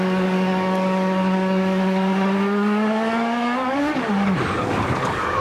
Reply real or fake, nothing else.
fake